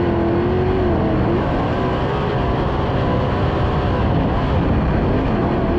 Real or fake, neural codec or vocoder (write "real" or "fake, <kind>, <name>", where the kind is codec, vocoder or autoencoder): real